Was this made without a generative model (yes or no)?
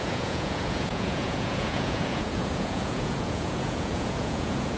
no